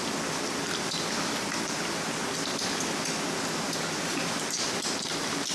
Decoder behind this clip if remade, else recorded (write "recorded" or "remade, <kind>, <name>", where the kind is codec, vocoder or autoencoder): recorded